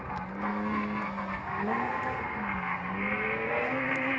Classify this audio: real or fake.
fake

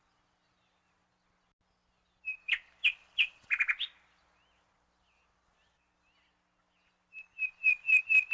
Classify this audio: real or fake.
real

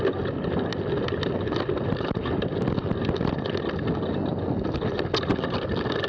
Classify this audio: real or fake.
real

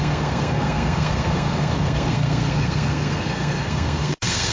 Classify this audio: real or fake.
fake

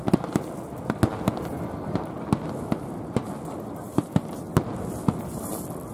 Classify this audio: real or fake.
real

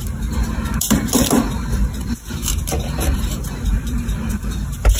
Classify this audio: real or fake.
fake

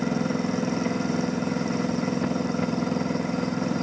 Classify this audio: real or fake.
fake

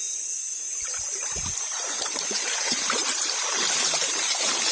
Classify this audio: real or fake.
fake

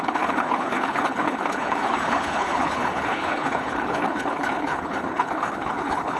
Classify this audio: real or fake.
fake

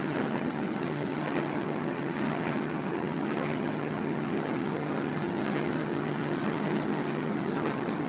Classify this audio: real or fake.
fake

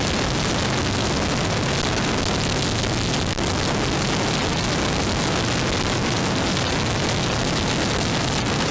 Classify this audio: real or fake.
real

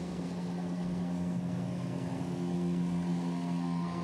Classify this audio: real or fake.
fake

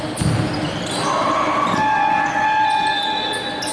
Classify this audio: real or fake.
real